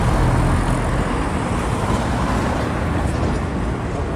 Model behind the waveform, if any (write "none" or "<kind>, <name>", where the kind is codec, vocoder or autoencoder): none